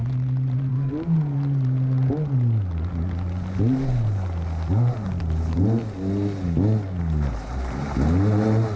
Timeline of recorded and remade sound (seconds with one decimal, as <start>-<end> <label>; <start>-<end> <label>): 0.0-8.8 recorded